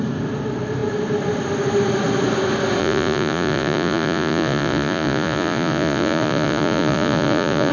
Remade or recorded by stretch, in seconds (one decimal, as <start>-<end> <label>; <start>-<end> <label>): 0.0-2.8 recorded; 2.8-7.7 remade